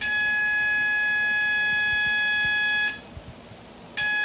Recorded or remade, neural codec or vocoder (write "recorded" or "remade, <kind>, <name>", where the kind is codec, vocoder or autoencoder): recorded